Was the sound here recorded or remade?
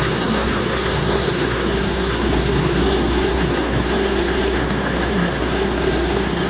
remade